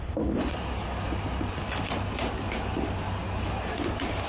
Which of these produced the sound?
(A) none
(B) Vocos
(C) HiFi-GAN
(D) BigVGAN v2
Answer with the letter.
A